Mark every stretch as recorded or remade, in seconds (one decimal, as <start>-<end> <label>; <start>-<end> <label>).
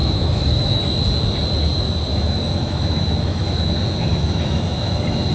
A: 0.0-0.8 remade; 0.8-2.1 recorded; 2.1-5.3 remade